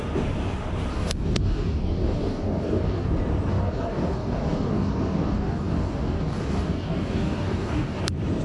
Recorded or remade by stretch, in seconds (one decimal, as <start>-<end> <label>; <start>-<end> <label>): 0.0-0.9 recorded; 0.9-3.1 remade; 3.1-3.5 recorded; 3.5-8.0 remade; 8.0-8.4 recorded